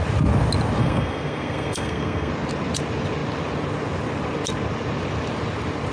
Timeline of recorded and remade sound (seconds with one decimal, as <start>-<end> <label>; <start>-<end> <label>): 0.0-0.8 recorded; 0.8-2.3 remade; 2.3-5.9 recorded